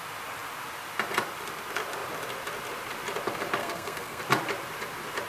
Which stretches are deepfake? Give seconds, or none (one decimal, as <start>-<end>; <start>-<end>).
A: 3.6-4.2